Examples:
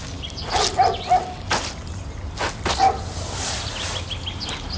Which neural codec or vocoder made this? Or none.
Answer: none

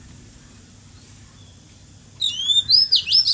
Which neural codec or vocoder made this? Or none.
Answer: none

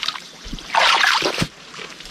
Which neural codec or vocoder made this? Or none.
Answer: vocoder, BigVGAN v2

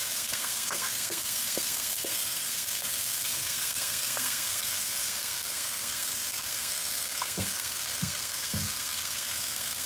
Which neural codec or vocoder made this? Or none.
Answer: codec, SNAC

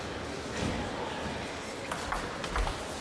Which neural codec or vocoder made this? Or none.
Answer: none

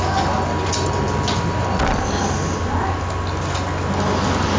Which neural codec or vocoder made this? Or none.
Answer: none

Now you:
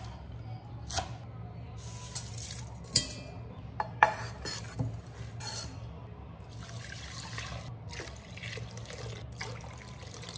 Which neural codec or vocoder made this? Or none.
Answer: none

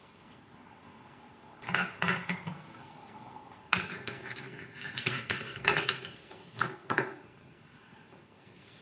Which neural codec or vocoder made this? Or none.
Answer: codec, SNAC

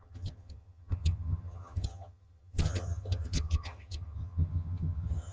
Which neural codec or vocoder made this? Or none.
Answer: vocoder, HiFi-GAN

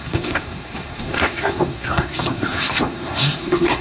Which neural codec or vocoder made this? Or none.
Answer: codec, SNAC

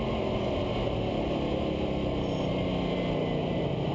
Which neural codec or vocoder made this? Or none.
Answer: none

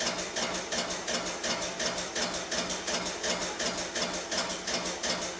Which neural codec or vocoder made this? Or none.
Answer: none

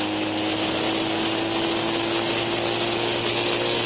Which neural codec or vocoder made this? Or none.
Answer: none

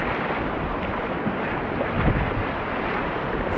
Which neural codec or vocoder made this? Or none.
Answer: none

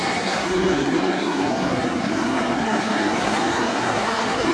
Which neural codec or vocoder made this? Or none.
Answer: codec, SNAC